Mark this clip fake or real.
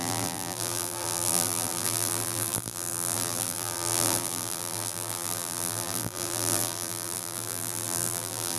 fake